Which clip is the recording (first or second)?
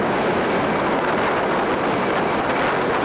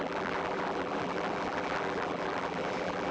first